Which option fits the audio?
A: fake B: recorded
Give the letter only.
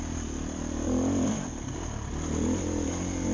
B